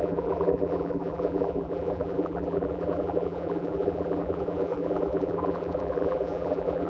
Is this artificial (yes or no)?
yes